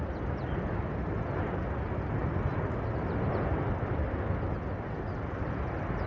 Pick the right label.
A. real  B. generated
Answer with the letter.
A